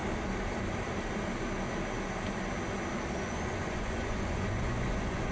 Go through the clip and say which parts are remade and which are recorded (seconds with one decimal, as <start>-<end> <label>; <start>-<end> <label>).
0.0-3.2 recorded; 3.2-5.3 remade